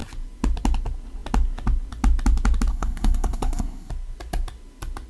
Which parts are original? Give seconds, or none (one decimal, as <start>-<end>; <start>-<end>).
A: 0.0-2.7; 3.9-5.1